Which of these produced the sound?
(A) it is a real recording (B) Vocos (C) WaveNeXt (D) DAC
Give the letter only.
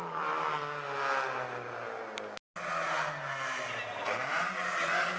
A